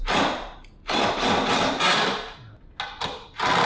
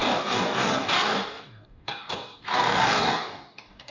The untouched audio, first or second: first